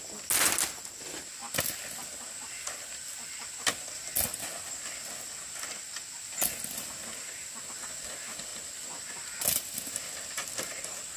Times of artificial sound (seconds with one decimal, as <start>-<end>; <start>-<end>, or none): none